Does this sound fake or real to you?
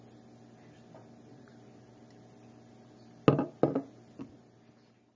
real